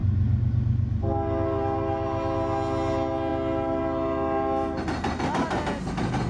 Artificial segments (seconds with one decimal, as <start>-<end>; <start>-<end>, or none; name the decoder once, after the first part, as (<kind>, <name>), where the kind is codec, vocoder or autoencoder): none